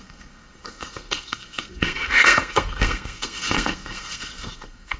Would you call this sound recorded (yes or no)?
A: no